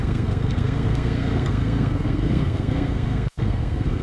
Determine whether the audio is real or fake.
fake